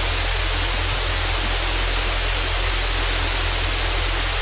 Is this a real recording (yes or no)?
yes